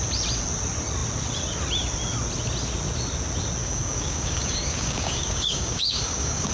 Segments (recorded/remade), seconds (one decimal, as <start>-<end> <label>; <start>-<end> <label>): 0.0-3.6 recorded; 3.6-6.5 remade